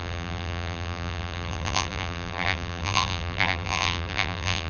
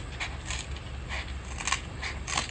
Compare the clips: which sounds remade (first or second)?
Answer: first